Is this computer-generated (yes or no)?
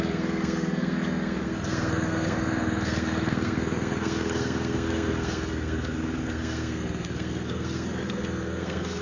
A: yes